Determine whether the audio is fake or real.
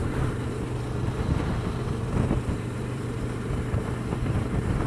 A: fake